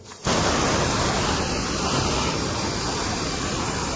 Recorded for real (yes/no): yes